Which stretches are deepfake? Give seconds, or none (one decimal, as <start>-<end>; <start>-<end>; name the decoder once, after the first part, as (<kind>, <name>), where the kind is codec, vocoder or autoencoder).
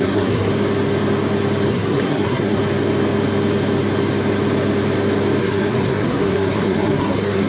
0.0-0.5 (codec, SNAC); 1.7-2.6; 5.4-7.5